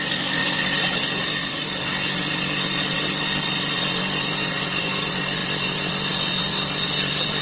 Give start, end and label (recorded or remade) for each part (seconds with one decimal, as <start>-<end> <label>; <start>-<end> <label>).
0.0-7.4 recorded